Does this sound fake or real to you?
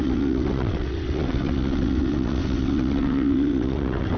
fake